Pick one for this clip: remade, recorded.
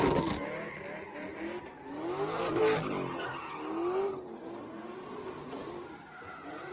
recorded